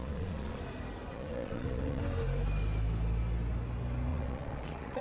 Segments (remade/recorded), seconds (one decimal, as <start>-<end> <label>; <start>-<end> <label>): 0.0-0.6 remade; 0.6-1.1 recorded; 1.1-2.0 remade; 2.0-4.1 recorded; 4.1-5.0 remade